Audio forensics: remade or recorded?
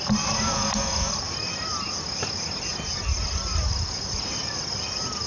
recorded